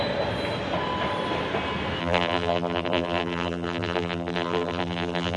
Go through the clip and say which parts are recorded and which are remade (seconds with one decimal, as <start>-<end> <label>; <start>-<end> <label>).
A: 0.0-2.0 recorded; 2.0-5.4 remade